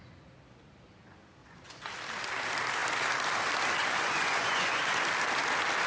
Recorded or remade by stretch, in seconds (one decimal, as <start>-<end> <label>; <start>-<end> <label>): 0.0-1.4 recorded; 1.4-1.9 remade; 1.9-3.8 recorded; 3.8-4.8 remade; 4.8-5.9 recorded

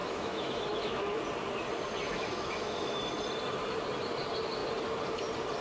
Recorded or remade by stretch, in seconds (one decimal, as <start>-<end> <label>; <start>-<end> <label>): 0.0-1.2 remade; 1.2-2.1 recorded; 2.1-3.0 remade; 3.0-5.6 recorded

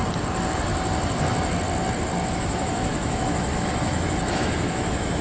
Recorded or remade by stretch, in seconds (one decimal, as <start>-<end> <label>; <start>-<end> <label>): 0.0-2.3 recorded; 2.3-5.2 remade

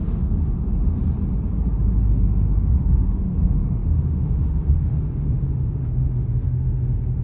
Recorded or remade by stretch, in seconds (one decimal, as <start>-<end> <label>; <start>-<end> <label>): 0.0-1.0 remade; 1.0-2.0 recorded; 2.0-7.2 remade

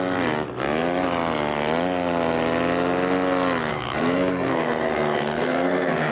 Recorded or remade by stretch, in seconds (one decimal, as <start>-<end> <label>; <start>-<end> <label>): 0.0-3.7 recorded; 3.7-6.1 remade

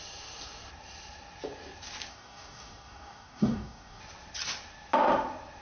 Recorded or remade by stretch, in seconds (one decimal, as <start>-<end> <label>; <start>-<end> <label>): 0.0-2.1 recorded; 2.1-4.0 remade; 4.0-5.6 recorded